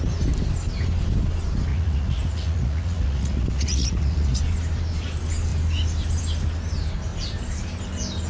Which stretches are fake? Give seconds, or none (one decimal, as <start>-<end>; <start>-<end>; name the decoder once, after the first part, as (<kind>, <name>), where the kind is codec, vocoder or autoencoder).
1.7-4.4 (vocoder, Vocos)